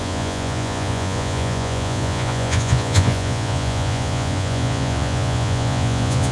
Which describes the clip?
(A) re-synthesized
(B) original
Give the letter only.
A